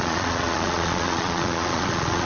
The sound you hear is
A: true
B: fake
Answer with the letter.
B